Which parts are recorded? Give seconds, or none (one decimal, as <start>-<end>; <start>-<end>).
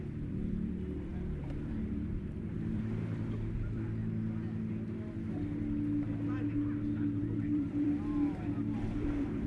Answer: 4.0-7.2